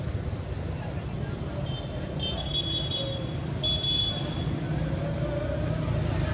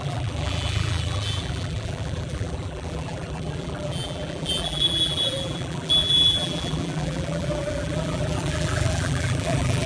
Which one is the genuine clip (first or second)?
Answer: first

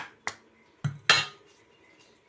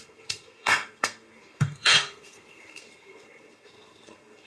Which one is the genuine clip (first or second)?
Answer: first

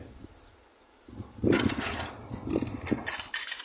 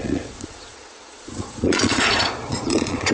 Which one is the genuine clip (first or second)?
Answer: first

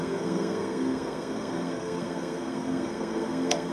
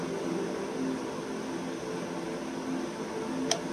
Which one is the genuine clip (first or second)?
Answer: second